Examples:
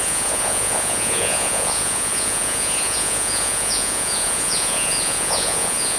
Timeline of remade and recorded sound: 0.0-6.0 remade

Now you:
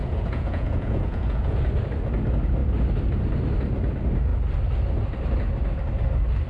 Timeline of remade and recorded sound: 0.0-1.6 remade; 1.6-6.5 recorded

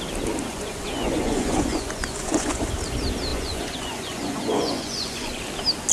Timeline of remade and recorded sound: 0.0-0.5 recorded; 0.5-2.6 remade; 2.6-3.3 recorded; 3.3-5.4 remade; 5.4-5.9 recorded